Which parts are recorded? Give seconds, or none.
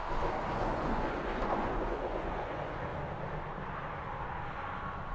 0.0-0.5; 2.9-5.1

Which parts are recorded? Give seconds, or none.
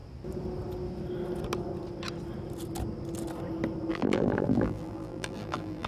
0.0-3.9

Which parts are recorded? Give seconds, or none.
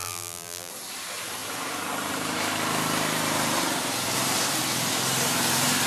0.7-5.9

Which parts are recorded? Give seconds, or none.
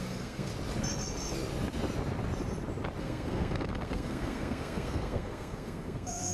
0.5-3.0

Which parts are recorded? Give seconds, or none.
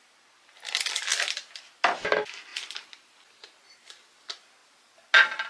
0.0-5.5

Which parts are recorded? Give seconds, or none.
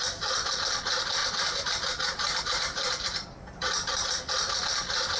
0.0-1.2; 4.3-5.2